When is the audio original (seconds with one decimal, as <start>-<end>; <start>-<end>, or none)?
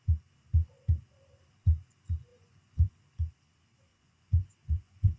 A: 0.0-2.3; 2.9-3.9